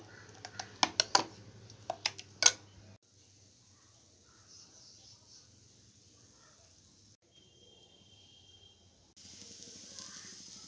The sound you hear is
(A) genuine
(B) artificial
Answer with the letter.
A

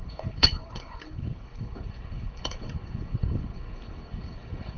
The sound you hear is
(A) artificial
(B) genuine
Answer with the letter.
A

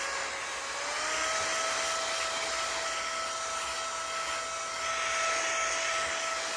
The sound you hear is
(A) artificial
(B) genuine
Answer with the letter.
B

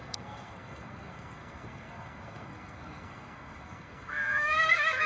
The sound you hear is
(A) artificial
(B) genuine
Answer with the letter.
A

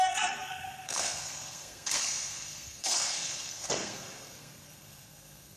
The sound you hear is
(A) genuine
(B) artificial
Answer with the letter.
B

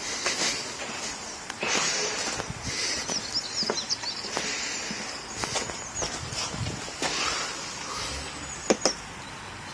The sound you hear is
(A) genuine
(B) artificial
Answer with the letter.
A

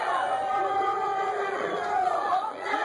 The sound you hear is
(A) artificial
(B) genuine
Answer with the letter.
A